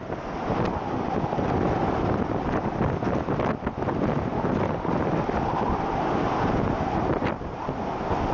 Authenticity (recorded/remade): recorded